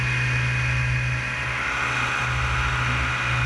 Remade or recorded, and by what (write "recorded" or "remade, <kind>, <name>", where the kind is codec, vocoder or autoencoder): recorded